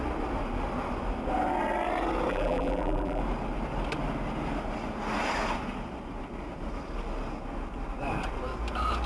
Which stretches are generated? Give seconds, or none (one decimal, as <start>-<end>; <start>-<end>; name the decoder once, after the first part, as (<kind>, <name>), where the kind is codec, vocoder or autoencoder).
2.3-3.2 (vocoder, BigVGAN v2)